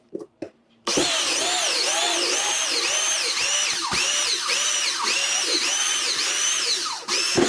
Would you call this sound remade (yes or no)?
yes